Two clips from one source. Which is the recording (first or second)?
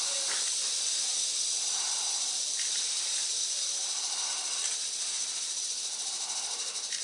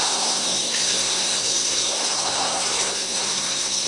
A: first